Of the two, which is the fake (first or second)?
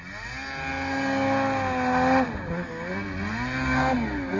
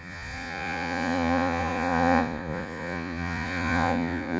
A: second